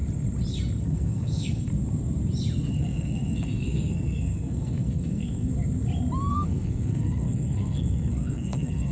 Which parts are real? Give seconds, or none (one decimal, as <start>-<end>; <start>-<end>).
0.0-0.8; 1.7-2.7; 5.5-6.3